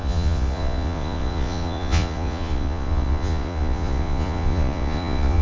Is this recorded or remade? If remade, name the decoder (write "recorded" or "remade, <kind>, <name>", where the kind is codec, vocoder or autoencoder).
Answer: remade, vocoder, Vocos